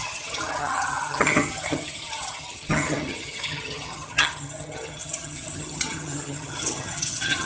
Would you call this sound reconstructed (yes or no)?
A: yes